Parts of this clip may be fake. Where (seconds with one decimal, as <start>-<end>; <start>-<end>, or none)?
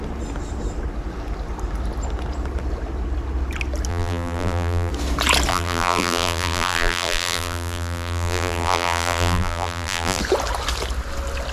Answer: 3.9-4.9; 5.5-10.2